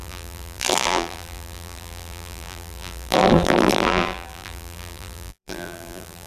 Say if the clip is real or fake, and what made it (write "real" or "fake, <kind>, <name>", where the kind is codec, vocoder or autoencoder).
fake, vocoder, BigVGAN v2